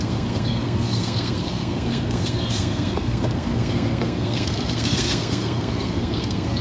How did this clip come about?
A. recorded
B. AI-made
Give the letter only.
B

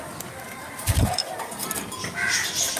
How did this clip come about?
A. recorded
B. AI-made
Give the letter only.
A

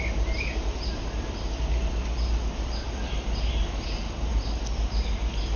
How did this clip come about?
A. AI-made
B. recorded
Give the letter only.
B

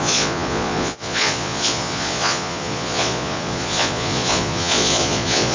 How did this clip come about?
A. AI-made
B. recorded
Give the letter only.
A